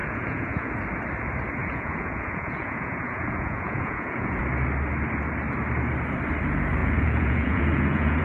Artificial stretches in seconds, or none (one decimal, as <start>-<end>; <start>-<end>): 0.0-0.7; 1.6-4.4; 6.8-8.2